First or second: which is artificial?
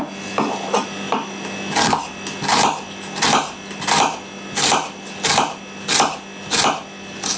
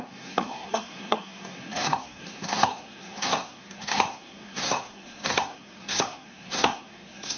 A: second